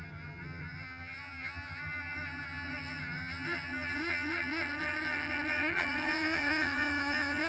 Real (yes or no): no